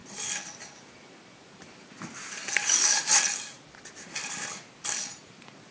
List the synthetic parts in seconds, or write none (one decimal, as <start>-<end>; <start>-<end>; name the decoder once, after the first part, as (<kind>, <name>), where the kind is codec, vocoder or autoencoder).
none